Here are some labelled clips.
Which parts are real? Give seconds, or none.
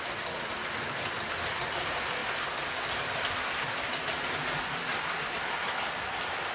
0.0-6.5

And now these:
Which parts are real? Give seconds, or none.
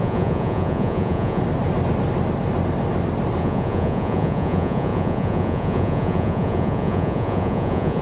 1.4-3.4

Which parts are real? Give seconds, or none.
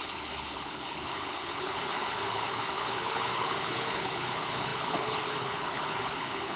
none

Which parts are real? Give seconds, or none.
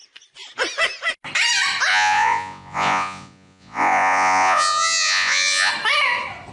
0.0-1.9; 5.7-6.5